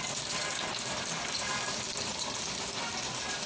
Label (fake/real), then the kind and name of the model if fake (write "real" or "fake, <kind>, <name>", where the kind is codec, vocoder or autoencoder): real